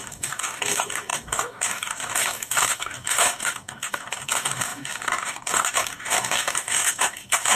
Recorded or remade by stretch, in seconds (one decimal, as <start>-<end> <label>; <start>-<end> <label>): 0.0-7.6 remade